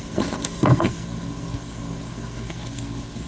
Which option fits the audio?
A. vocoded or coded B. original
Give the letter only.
A